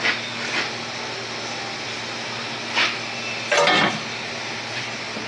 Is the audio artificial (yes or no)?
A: no